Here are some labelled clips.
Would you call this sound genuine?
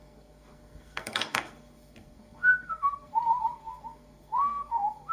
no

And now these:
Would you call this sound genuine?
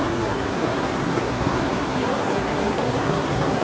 no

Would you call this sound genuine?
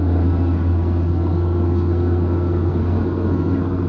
no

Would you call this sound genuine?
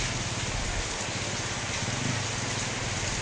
yes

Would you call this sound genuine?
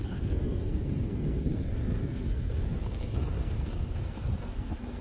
no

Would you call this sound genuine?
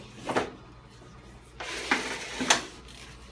yes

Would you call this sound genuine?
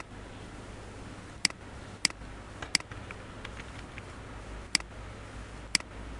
yes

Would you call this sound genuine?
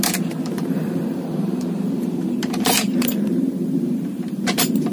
no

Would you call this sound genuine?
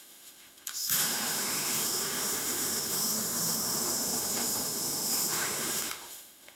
no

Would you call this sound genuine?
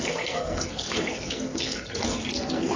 no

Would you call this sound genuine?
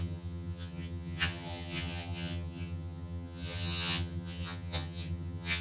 no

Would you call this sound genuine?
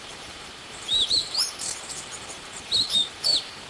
no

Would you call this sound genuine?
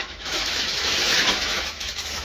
no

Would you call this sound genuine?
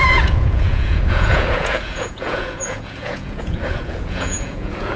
no